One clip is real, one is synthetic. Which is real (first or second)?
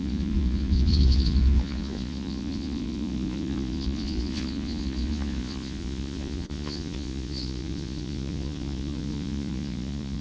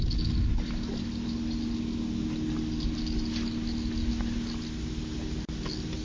second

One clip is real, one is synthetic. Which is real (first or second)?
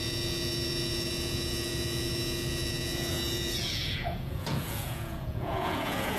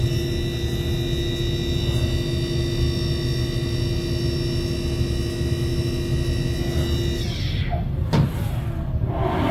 second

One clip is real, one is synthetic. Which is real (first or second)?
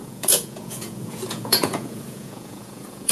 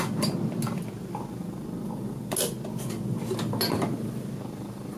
second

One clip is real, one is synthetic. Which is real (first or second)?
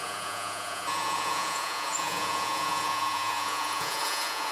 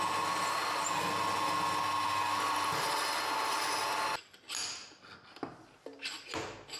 second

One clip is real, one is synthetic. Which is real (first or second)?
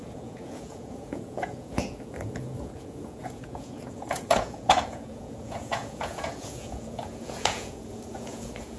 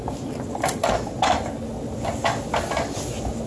second